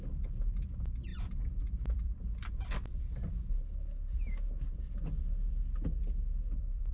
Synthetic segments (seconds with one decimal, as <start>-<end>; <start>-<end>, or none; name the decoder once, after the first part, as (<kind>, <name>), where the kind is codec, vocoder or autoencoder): none